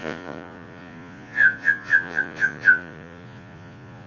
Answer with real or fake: fake